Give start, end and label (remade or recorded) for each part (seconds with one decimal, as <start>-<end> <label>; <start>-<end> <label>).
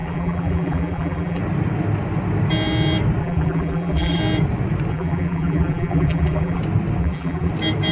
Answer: 0.0-1.4 remade; 1.4-3.2 recorded; 3.2-4.2 remade; 4.2-4.9 recorded; 4.9-6.6 remade; 6.6-7.0 recorded; 7.0-7.5 remade; 7.5-7.9 recorded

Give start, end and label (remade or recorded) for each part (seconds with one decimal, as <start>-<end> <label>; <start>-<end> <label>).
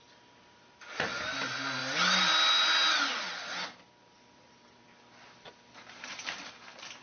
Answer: 0.0-1.8 remade; 1.8-6.0 recorded; 6.0-7.0 remade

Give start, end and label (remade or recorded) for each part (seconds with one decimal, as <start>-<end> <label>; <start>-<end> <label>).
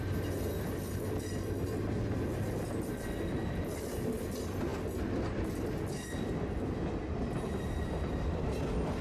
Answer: 0.0-9.0 recorded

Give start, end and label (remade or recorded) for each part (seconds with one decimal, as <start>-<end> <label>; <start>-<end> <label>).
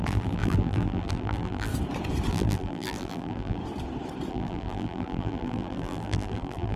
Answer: 0.0-1.7 remade; 1.7-2.3 recorded; 2.3-3.6 remade; 3.6-4.3 recorded; 4.3-6.8 remade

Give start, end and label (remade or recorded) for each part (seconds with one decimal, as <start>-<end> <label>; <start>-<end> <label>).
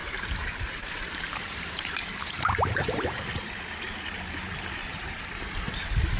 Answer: 0.0-3.5 remade; 3.5-4.8 recorded; 4.8-5.5 remade; 5.5-6.2 recorded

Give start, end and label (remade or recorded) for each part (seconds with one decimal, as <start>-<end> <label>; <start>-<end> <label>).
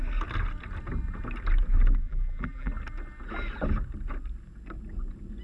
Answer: 0.0-2.0 recorded; 2.0-2.7 remade; 2.7-5.4 recorded